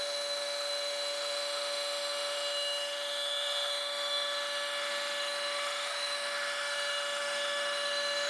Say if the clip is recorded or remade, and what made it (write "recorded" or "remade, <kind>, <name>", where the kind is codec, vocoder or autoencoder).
remade, autoencoder, DAC-VAE